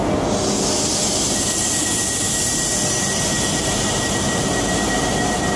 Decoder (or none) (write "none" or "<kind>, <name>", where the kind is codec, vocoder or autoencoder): none